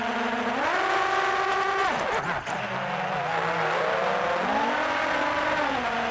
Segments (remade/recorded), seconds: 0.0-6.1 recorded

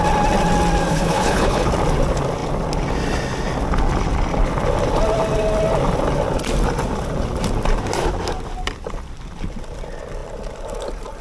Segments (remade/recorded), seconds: 0.0-0.9 recorded; 0.9-1.7 remade; 1.7-11.2 recorded